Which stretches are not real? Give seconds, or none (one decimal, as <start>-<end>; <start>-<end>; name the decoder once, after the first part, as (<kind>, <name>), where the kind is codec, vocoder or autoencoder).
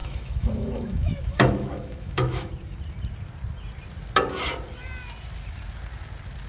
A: 0.0-2.5 (autoencoder, DAC-VAE)